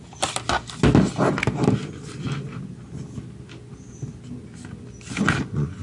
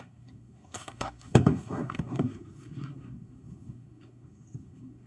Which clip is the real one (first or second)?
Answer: first